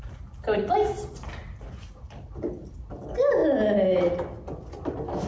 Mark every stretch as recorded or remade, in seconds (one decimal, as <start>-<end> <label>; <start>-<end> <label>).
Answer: 0.0-5.3 recorded